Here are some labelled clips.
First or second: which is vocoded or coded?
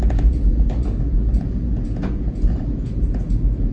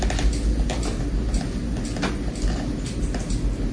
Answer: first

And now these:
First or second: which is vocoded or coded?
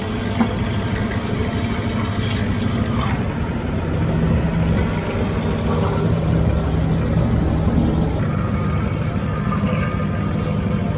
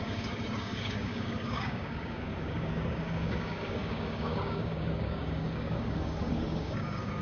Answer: second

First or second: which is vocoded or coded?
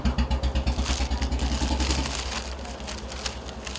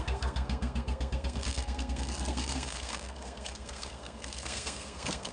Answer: second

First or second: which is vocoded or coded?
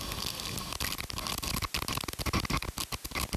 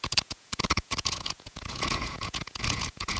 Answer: second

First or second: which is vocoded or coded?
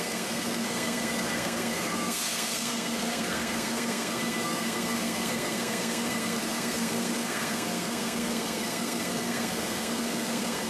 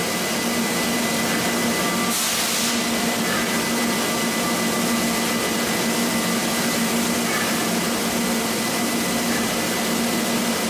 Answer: first